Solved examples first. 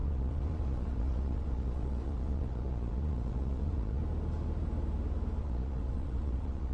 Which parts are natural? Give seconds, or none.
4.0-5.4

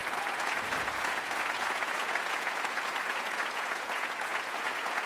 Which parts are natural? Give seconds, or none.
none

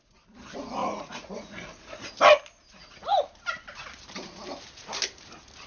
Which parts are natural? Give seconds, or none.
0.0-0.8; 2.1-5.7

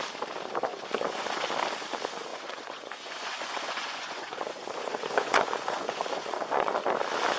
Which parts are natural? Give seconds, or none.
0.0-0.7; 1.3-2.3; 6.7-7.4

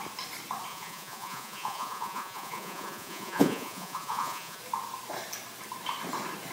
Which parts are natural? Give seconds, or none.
0.0-0.7; 4.6-6.5

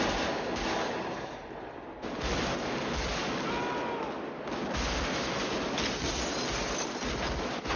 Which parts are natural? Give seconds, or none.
0.0-7.8

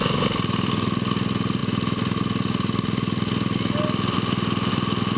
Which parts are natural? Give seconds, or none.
0.0-5.2

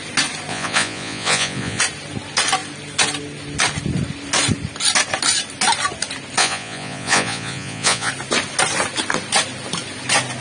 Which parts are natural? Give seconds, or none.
0.0-0.5; 1.8-6.4; 8.1-10.4